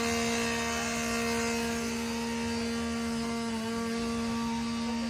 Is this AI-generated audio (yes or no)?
no